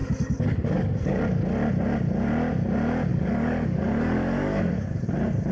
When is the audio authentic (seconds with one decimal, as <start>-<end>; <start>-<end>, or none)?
1.2-3.1; 5.0-5.5